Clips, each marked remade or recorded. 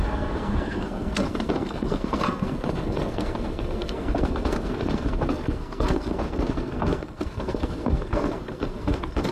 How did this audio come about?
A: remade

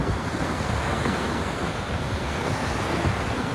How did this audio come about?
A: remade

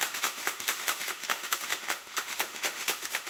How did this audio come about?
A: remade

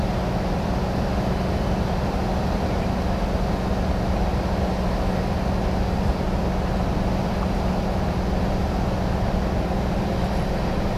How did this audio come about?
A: recorded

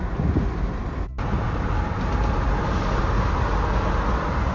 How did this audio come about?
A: recorded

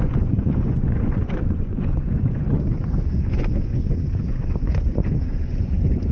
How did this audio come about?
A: remade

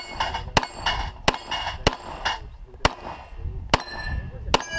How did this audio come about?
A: recorded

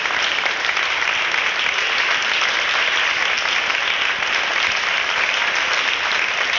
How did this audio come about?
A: recorded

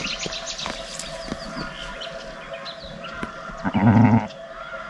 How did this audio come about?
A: recorded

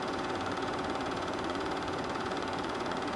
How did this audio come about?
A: remade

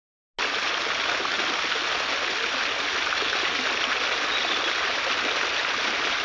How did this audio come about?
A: recorded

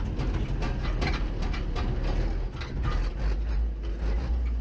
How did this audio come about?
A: recorded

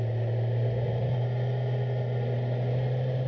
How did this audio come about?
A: recorded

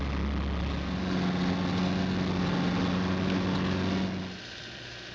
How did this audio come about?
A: recorded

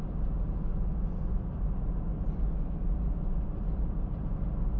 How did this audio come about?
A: recorded